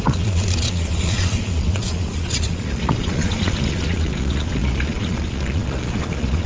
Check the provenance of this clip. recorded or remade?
remade